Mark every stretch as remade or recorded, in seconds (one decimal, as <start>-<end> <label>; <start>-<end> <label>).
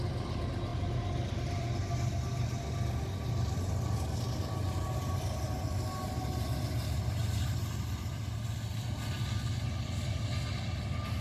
0.0-11.2 recorded